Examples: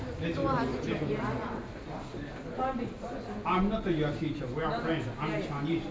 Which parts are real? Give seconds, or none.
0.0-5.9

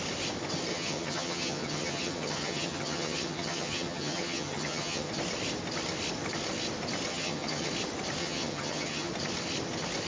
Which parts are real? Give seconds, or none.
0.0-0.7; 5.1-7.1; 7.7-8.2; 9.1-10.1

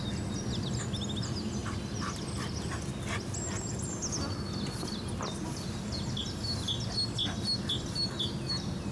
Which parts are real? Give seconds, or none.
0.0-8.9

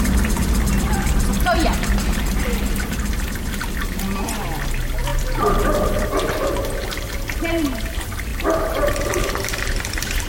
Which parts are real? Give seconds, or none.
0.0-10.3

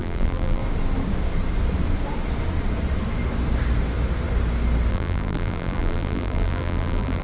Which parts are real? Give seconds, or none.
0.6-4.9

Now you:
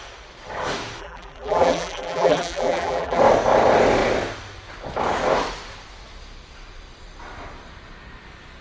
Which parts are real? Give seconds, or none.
0.0-1.0; 3.2-8.6